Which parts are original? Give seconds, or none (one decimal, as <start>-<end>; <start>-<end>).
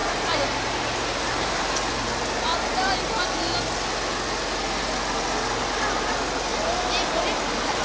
2.9-6.5